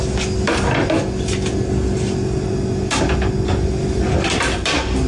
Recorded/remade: recorded